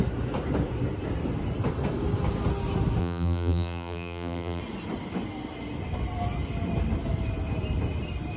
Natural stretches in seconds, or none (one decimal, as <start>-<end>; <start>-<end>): 0.0-3.0; 4.6-8.4